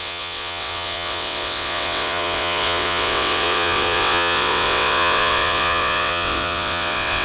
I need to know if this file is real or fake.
fake